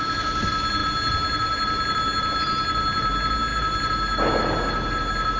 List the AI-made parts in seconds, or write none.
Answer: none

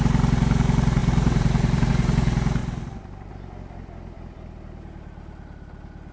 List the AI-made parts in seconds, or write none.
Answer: 1.0-1.9 (vocoder, BigVGAN v2); 2.6-3.3

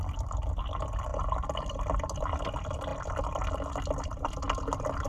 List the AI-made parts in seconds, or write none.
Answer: none

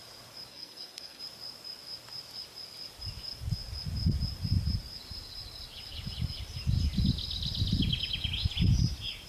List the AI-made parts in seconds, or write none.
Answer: 0.5-1.2 (codec, SNAC)

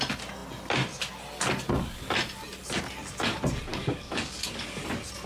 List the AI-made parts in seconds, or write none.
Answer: 3.7-4.8 (codec, DAC)

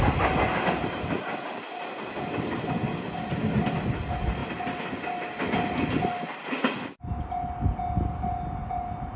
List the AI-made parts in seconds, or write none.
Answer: none

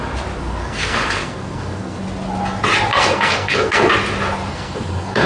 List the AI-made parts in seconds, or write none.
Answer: 0.4-2.0 (codec, SNAC); 2.9-3.9; 4.5-5.3